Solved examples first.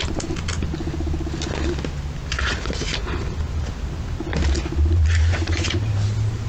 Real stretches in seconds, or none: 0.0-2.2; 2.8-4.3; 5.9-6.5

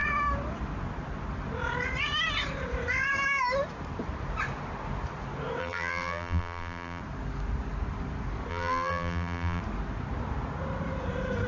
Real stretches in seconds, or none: 0.0-5.6; 7.0-8.5; 9.6-11.5